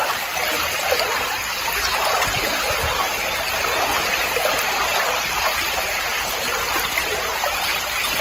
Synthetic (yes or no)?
no